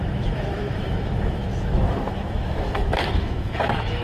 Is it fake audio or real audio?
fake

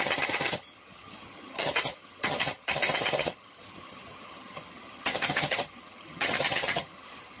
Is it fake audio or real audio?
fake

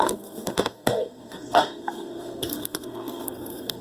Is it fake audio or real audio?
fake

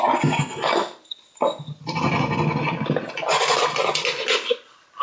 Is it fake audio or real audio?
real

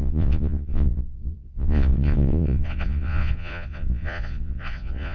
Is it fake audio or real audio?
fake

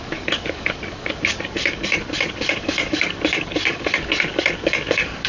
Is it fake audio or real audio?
fake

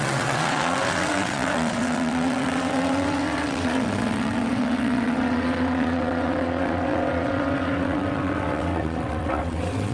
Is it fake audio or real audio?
fake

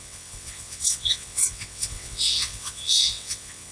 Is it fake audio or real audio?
fake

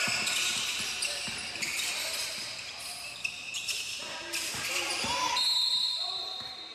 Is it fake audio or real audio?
real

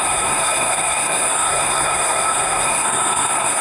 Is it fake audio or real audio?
fake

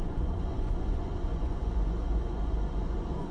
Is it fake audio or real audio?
fake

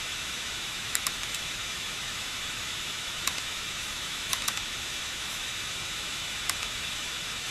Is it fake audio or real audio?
fake